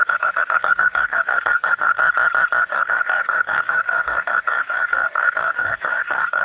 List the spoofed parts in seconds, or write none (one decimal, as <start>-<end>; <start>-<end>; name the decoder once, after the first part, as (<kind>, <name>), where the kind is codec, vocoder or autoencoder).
0.0-2.0 (codec, DAC); 2.6-6.4